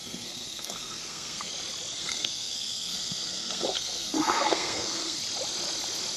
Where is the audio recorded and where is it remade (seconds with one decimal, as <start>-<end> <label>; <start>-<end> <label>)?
0.0-1.5 remade; 1.5-2.0 recorded; 2.0-5.2 remade; 5.2-6.2 recorded